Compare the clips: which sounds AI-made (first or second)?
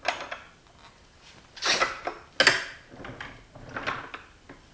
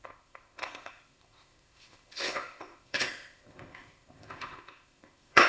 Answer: second